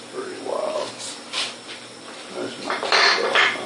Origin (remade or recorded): recorded